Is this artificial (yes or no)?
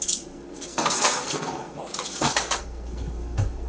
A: yes